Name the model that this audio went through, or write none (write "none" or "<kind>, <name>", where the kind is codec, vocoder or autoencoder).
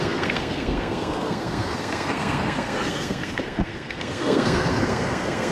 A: codec, SNAC